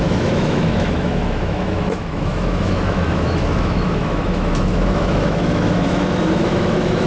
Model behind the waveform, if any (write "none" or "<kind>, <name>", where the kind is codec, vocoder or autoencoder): autoencoder, DAC-VAE